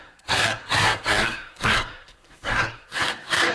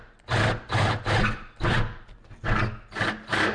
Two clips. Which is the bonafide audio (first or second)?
second